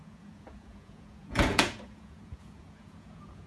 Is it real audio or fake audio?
fake